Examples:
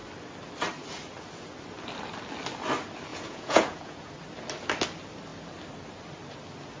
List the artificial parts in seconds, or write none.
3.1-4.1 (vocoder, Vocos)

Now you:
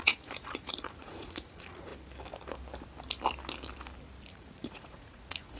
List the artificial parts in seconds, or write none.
0.0-1.9 (vocoder, Vocos); 4.3-5.6

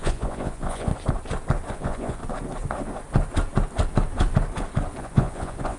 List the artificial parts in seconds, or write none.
0.0-0.9 (vocoder, Vocos); 1.7-2.2; 5.0-5.8

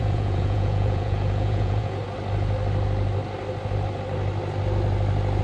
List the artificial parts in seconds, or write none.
0.0-2.0 (vocoder, Vocos)